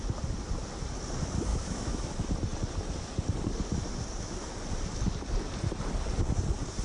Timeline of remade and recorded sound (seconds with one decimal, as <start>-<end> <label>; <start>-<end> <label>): 0.0-1.5 recorded; 1.5-2.1 remade; 2.1-6.8 recorded